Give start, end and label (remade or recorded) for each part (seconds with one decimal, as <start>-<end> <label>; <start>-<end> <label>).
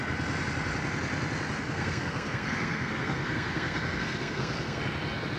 0.0-1.6 recorded; 1.6-4.8 remade; 4.8-5.4 recorded